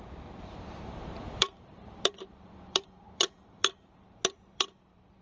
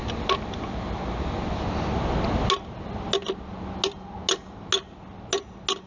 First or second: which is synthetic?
first